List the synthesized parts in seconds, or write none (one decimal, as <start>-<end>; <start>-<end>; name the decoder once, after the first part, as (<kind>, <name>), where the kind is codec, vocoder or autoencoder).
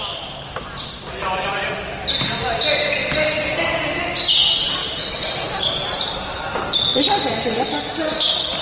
4.8-6.2 (vocoder, BigVGAN v2)